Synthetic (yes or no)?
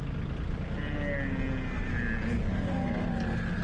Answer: no